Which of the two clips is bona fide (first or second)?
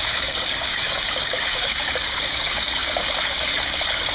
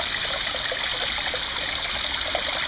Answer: second